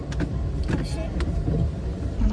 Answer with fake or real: real